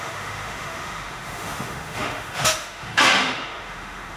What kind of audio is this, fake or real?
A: fake